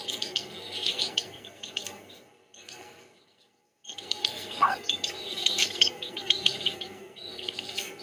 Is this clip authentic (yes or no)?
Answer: no